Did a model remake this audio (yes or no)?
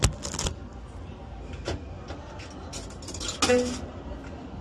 no